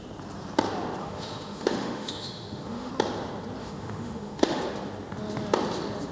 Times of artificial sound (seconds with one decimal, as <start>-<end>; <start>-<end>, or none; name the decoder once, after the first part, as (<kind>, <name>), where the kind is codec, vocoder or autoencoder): 1.0-2.9 (autoencoder, DAC-VAE); 3.6-4.6

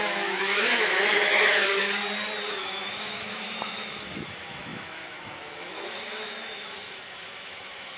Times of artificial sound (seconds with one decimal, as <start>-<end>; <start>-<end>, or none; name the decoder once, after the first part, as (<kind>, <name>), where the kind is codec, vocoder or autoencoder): 0.0-2.0 (autoencoder, DAC-VAE); 2.5-8.0

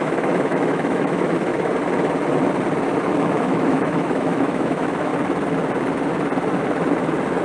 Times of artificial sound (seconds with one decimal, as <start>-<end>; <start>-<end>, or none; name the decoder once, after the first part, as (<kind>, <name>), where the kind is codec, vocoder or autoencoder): 0.0-1.5 (autoencoder, DAC-VAE); 3.0-5.1

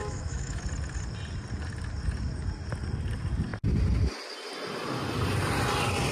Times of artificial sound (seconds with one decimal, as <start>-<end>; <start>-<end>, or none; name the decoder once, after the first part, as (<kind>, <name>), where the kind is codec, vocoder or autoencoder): 0.0-0.6 (autoencoder, DAC-VAE)

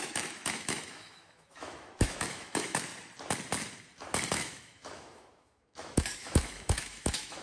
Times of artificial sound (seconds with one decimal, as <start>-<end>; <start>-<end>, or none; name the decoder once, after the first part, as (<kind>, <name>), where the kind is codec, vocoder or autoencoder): 0.0-2.9 (autoencoder, DAC-VAE); 4.3-7.4

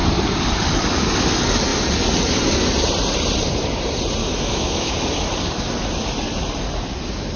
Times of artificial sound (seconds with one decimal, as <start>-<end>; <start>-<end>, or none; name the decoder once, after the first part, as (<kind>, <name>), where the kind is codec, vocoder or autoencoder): 4.2-4.9 (autoencoder, DAC-VAE)

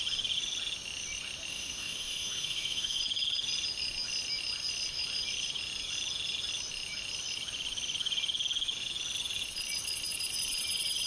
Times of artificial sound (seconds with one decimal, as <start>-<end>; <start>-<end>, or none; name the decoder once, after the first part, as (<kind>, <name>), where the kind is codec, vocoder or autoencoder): 1.5-3.0 (autoencoder, DAC-VAE)